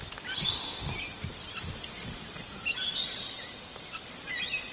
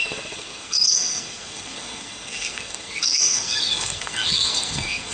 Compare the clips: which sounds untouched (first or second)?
first